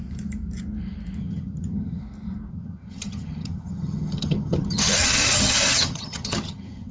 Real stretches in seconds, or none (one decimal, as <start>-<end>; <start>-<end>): 0.0-1.2; 2.0-2.5